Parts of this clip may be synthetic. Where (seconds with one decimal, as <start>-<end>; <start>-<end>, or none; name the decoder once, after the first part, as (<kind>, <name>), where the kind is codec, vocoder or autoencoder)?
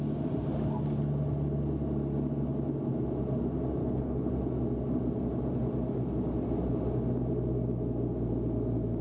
3.8-4.3 (codec, HILCodec)